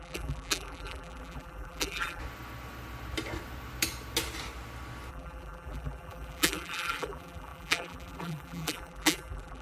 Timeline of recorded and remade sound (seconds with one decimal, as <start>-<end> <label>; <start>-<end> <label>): 0.0-2.2 remade; 2.2-5.1 recorded; 5.1-9.6 remade